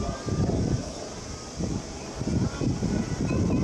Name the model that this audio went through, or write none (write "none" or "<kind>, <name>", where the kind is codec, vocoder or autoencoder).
none